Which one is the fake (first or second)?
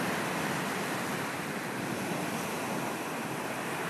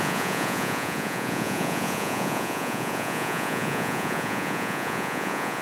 second